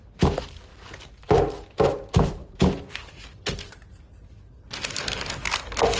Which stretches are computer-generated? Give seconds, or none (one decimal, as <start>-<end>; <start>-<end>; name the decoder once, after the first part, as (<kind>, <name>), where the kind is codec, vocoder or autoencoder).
none